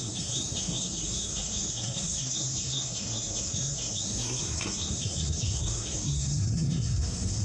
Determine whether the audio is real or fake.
fake